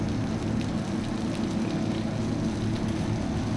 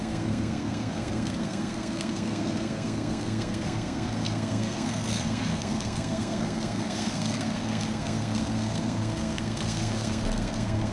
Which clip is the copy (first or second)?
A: second